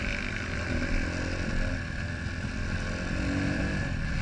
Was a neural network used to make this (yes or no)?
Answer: no